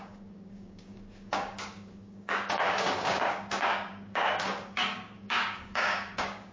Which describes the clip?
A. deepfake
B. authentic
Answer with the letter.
A